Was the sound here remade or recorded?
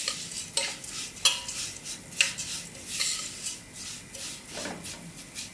recorded